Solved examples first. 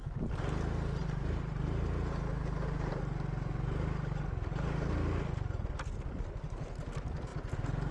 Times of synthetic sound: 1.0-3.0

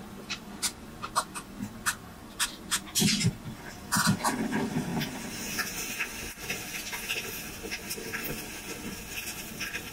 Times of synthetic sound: none